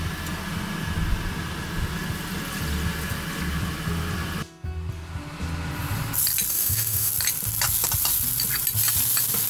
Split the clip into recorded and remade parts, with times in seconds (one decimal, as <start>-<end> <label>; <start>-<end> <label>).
0.0-6.5 recorded; 6.5-7.1 remade; 7.1-9.5 recorded

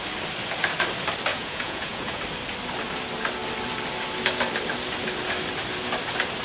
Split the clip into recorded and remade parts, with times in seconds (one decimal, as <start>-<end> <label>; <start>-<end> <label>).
0.0-1.3 recorded; 1.3-2.2 remade; 2.2-6.4 recorded

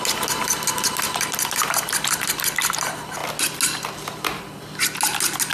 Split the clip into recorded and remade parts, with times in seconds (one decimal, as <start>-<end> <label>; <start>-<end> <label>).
0.0-5.5 recorded

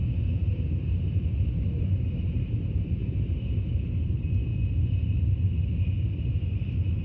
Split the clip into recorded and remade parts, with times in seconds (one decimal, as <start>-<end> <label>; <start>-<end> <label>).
0.0-7.0 recorded

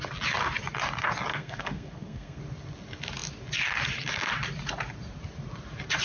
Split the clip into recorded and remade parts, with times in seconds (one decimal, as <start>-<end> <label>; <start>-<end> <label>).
0.0-1.3 recorded; 1.3-2.4 remade; 2.4-6.0 recorded